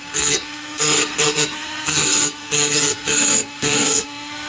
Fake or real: fake